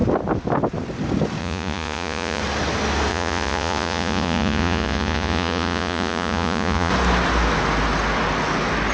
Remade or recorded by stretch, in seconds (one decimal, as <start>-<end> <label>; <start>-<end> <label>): 0.0-1.4 recorded; 1.4-2.4 remade; 2.4-3.1 recorded; 3.1-6.9 remade; 6.9-8.9 recorded